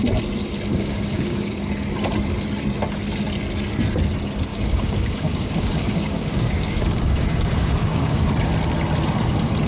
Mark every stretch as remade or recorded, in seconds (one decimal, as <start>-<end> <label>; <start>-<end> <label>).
0.0-0.7 recorded; 0.7-1.6 remade; 1.6-4.5 recorded; 4.5-8.3 remade; 8.3-9.7 recorded